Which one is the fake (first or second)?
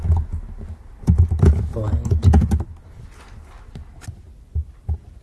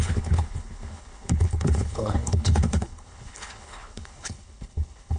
second